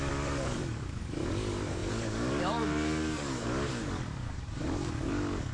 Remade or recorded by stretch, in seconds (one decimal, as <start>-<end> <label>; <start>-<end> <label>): 0.0-5.5 remade